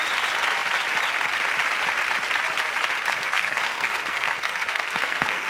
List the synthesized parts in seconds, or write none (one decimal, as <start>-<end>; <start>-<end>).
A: 3.1-5.5